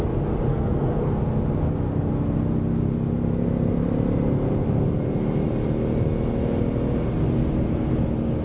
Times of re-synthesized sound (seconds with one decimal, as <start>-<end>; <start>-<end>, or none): 0.5-1.2